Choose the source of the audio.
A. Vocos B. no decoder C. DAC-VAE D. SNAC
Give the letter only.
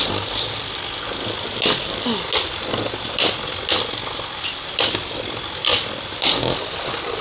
B